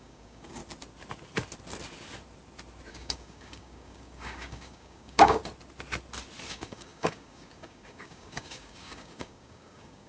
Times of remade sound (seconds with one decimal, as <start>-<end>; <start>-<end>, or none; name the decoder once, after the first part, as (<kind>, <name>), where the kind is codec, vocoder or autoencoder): 0.0-0.6 (codec, DAC); 2.9-5.4; 6.5-10.1